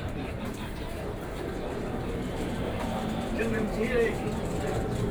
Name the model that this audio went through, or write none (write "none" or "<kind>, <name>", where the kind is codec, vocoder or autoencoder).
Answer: vocoder, BigVGAN v2